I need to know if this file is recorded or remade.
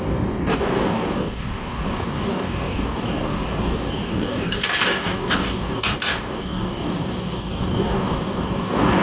remade